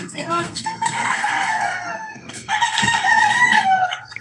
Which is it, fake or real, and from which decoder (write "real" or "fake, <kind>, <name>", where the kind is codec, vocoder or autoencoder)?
fake, codec, SNAC